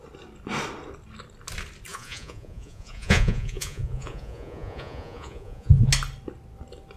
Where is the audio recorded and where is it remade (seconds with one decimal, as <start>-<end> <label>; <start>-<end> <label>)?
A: 0.0-1.9 recorded; 1.9-5.9 remade; 5.9-7.0 recorded